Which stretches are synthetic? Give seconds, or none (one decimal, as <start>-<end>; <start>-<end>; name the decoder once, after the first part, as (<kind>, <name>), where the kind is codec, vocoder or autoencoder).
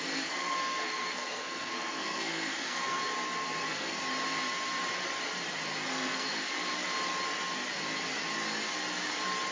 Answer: 0.0-3.0 (codec, SNAC); 3.6-4.0; 5.9-6.7